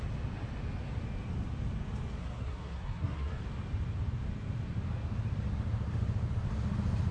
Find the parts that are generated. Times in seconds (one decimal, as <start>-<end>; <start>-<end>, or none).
2.2-3.4